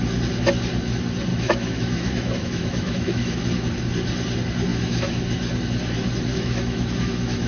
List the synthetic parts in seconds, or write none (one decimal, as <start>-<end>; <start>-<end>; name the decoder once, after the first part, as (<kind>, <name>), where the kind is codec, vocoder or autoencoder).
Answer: 1.3-3.4 (autoencoder, DAC-VAE); 4.7-5.2; 6.3-7.5